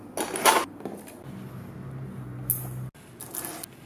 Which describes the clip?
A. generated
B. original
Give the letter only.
B